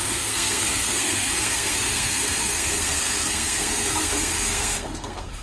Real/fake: fake